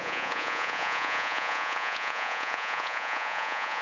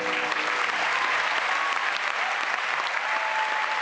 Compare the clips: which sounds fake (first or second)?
first